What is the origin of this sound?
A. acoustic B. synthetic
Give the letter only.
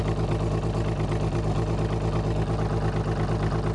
A